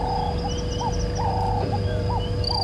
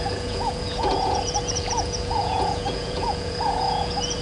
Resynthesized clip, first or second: second